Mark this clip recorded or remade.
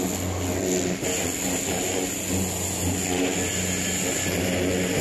recorded